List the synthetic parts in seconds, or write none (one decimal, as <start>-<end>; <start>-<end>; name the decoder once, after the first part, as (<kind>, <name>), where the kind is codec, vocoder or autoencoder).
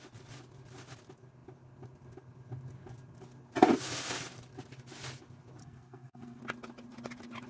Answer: 5.6-6.4 (codec, SNAC)